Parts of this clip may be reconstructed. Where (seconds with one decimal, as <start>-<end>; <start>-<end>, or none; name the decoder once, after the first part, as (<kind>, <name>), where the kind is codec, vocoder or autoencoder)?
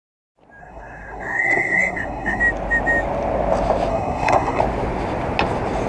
0.6-2.4 (codec, SNAC); 3.9-4.6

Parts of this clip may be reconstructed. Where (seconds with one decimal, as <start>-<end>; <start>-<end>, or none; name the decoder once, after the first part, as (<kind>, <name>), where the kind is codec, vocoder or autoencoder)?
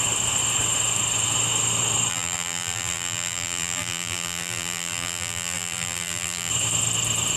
2.1-6.5 (vocoder, BigVGAN v2)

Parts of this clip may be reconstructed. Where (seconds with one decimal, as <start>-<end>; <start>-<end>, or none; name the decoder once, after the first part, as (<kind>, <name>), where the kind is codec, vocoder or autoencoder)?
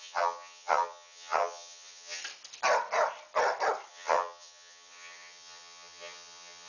0.0-2.2 (vocoder, HiFi-GAN); 3.9-6.7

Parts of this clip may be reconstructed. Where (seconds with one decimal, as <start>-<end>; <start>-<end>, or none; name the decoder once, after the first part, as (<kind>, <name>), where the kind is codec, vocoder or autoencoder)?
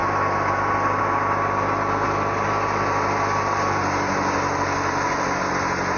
none